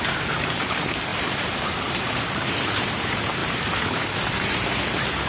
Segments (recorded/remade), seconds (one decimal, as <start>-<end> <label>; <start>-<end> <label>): 0.0-5.3 remade